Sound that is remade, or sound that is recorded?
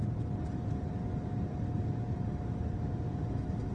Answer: recorded